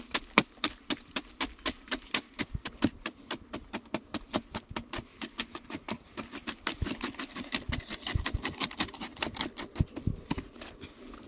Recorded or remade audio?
recorded